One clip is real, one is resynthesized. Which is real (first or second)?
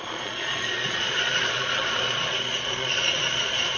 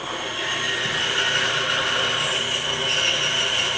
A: second